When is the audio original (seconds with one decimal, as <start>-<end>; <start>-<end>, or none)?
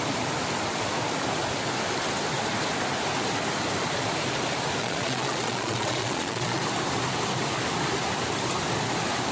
0.0-4.8; 6.6-9.3